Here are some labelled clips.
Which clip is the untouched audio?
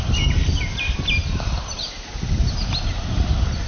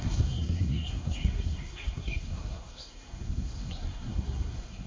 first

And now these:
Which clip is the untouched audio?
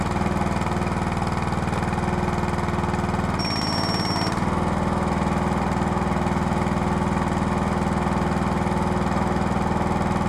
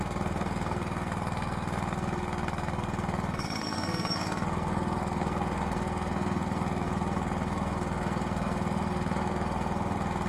first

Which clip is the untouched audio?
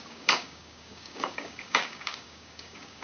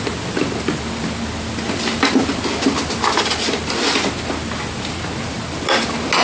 second